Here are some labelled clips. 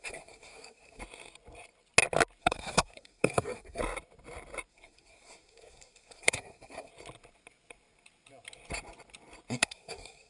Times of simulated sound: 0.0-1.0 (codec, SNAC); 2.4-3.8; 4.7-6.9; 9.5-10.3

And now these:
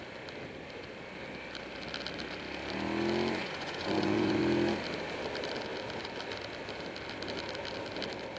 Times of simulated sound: 3.4-4.4 (vocoder, Vocos)

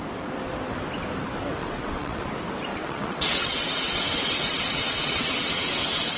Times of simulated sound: 1.6-2.3 (vocoder, WaveNeXt); 2.7-6.2